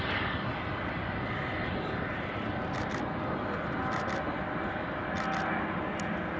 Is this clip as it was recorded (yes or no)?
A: yes